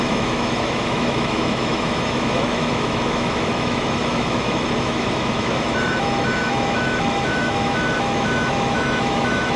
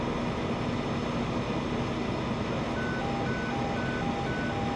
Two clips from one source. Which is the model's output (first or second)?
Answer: first